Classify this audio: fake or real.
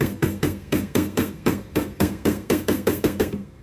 fake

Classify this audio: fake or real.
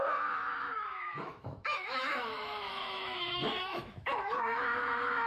fake